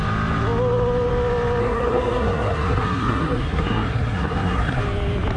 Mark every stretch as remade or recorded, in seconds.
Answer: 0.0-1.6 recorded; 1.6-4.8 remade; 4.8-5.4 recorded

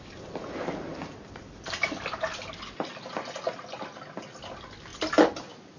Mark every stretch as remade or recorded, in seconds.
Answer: 0.0-5.8 recorded

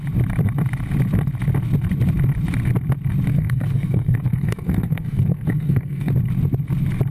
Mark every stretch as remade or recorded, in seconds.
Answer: 0.0-3.3 recorded; 3.3-6.1 remade; 6.1-7.1 recorded

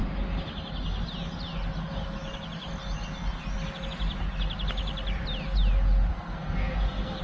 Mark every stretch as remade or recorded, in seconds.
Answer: 0.0-6.1 recorded; 6.1-7.2 remade